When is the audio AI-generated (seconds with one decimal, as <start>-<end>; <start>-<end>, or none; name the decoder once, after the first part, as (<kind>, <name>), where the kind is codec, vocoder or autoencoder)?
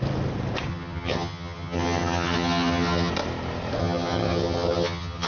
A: 0.7-3.1 (vocoder, HiFi-GAN); 3.8-5.3